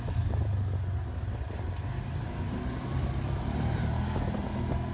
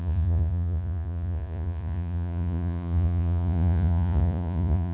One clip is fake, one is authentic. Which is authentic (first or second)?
first